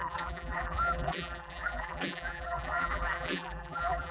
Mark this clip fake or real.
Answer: fake